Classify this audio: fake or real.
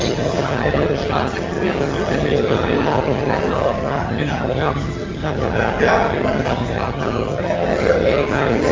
fake